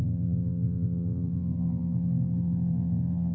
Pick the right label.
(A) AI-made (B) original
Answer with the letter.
A